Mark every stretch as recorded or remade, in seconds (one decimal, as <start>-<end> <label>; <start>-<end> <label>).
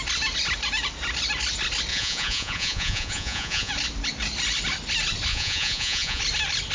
0.0-1.9 recorded; 1.9-3.7 remade; 3.7-5.3 recorded; 5.3-6.2 remade; 6.2-6.7 recorded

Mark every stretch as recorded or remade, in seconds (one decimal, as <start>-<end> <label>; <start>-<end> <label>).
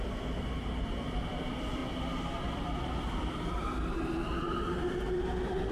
0.0-1.8 remade; 1.8-2.4 recorded; 2.4-5.7 remade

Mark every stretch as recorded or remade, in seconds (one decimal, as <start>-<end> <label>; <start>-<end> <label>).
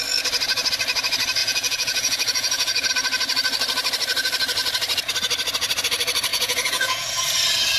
0.0-1.4 recorded; 1.4-2.9 remade; 2.9-6.3 recorded; 6.3-7.2 remade; 7.2-7.8 recorded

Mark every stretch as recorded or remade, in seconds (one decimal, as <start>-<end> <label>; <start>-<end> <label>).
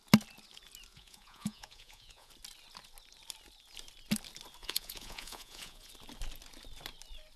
0.0-0.9 recorded; 0.9-2.3 remade; 2.3-4.6 recorded; 4.6-5.9 remade; 5.9-7.4 recorded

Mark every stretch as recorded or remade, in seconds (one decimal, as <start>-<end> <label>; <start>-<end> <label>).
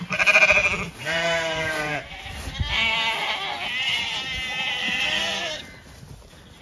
0.0-0.6 recorded; 0.6-2.2 remade; 2.2-6.6 recorded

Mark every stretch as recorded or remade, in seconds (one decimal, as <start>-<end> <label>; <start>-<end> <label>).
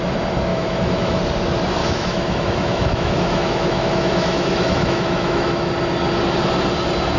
0.0-0.5 recorded; 0.5-1.2 remade; 1.2-1.8 recorded; 1.8-5.7 remade; 5.7-7.2 recorded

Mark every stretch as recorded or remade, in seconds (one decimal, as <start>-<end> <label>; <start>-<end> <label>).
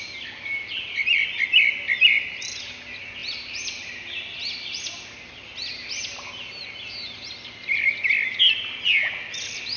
0.0-9.8 recorded